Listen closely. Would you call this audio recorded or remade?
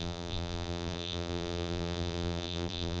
remade